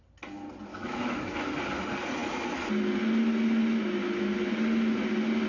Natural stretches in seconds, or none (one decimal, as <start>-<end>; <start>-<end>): 0.0-0.7; 1.4-5.5